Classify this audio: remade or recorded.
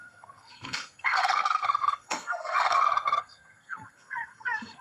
remade